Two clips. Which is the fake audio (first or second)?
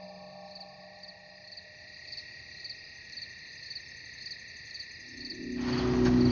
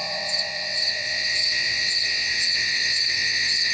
second